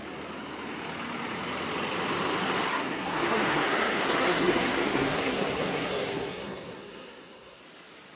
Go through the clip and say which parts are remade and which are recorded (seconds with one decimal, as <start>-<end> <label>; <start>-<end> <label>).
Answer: 0.0-2.7 recorded; 2.7-7.6 remade; 7.6-8.2 recorded